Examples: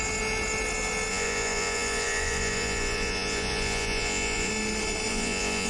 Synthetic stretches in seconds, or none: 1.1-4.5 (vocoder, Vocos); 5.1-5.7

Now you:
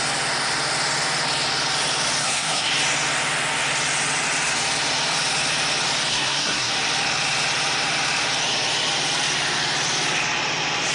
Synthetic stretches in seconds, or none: 2.2-2.7 (codec, SNAC); 6.1-6.7

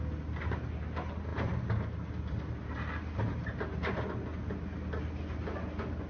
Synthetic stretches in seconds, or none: none

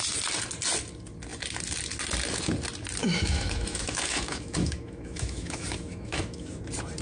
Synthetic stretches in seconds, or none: 3.0-6.6 (autoencoder, DAC-VAE)

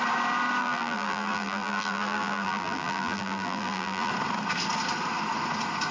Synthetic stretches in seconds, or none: 0.6-4.1 (vocoder, BigVGAN v2)

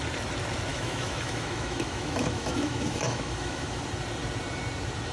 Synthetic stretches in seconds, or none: 0.7-3.8 (autoencoder, DAC-VAE)